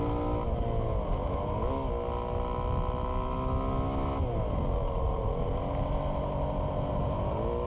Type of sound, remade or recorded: recorded